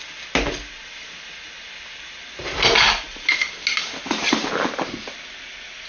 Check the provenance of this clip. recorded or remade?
recorded